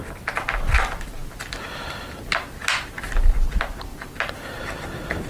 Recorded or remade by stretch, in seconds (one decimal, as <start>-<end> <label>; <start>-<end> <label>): 0.0-3.9 recorded; 3.9-4.6 remade; 4.6-5.3 recorded